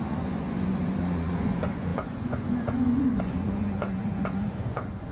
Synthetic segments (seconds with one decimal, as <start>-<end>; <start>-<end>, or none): 0.0-5.1